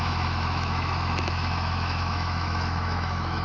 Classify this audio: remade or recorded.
remade